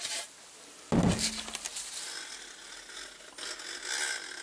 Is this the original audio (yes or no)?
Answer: yes